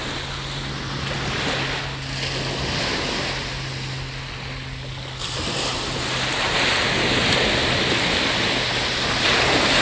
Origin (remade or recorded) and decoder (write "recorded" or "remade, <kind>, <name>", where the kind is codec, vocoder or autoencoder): recorded